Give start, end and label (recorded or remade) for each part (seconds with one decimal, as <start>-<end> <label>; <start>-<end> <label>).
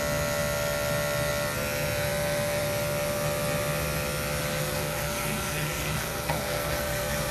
0.0-4.6 recorded; 4.6-7.3 remade